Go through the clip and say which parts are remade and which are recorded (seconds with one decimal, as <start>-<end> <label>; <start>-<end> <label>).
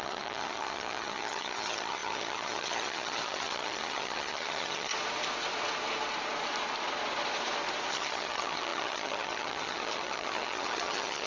0.0-4.9 remade; 4.9-7.9 recorded; 7.9-11.3 remade